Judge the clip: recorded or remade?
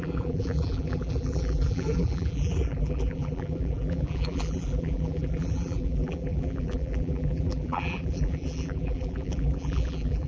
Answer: remade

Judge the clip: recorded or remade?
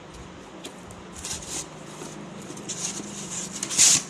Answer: remade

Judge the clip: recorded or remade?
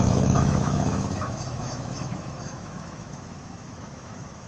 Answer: remade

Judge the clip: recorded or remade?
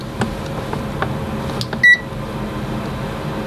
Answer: recorded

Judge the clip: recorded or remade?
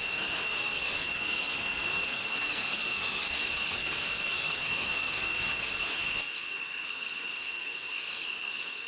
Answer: remade